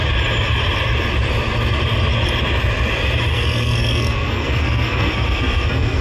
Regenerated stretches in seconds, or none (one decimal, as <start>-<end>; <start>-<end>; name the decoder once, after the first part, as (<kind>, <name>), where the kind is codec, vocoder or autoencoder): 3.3-6.0 (codec, SNAC)